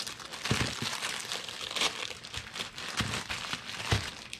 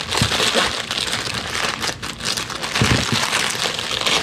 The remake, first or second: first